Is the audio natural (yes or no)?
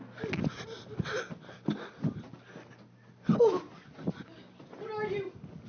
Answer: yes